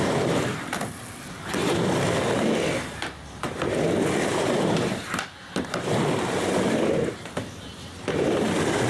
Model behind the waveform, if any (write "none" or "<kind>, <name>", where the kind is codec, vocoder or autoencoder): none